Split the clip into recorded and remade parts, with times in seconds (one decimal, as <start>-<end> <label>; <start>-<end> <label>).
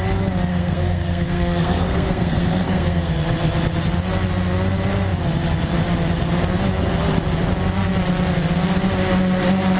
0.0-0.5 recorded; 0.5-3.1 remade; 3.1-9.8 recorded